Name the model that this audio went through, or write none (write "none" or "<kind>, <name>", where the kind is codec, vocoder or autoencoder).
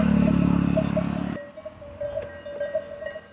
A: none